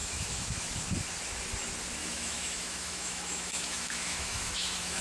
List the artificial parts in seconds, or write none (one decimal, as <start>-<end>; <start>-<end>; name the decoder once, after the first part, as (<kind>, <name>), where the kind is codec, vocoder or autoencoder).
0.0-0.7 (autoencoder, DAC-VAE); 2.0-5.0